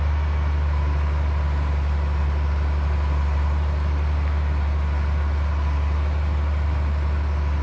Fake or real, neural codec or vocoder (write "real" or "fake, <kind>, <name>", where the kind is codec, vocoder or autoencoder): real